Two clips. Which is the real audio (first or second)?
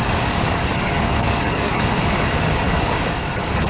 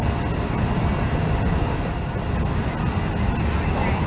second